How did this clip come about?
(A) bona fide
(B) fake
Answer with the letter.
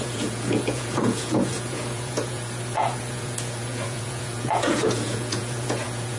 B